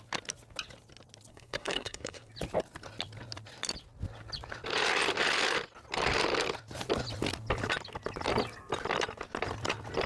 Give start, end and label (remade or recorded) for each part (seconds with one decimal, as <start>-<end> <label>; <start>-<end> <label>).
0.0-1.3 recorded; 1.3-2.3 remade; 2.3-10.1 recorded